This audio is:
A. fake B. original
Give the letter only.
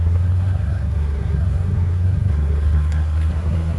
A